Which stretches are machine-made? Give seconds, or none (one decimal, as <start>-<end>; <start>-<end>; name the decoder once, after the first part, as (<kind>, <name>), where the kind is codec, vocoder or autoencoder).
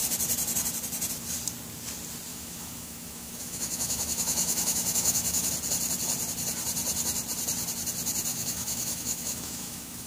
2.3-5.5 (autoencoder, DAC-VAE); 8.3-10.1